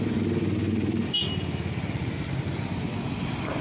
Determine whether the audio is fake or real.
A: real